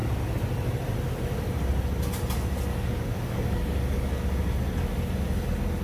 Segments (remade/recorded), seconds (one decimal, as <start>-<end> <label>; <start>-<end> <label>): 0.0-2.7 recorded; 2.7-4.2 remade; 4.2-5.8 recorded